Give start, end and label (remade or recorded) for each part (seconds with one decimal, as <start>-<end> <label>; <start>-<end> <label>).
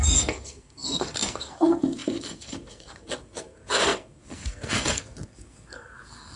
0.0-6.4 remade